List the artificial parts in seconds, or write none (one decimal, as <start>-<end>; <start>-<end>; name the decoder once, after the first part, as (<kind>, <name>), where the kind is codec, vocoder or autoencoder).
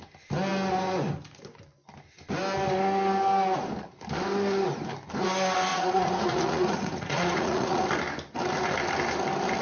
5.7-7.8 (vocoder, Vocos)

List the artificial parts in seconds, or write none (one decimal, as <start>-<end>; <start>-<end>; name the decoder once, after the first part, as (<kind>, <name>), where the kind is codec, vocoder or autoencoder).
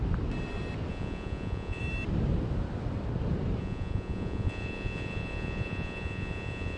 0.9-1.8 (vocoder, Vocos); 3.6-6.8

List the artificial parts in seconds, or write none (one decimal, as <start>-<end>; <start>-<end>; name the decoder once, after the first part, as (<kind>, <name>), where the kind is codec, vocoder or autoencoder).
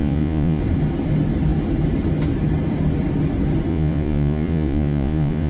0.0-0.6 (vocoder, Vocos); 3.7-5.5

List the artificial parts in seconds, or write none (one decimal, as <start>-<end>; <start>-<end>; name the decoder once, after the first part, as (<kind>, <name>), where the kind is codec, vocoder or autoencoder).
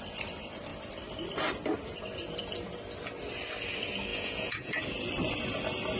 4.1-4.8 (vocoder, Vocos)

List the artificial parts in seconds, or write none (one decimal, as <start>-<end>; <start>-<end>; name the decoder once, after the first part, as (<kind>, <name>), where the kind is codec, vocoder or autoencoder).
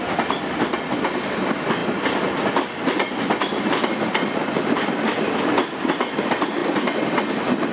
none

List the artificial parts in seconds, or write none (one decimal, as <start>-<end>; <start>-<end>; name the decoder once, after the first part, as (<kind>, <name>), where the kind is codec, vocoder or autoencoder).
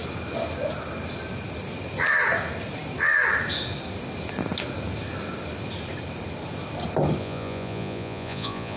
7.2-8.8 (vocoder, Vocos)